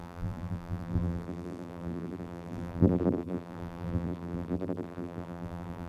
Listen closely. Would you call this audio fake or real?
fake